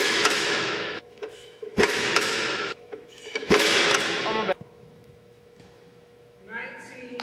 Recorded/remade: remade